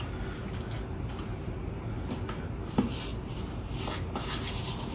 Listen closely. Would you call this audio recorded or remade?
recorded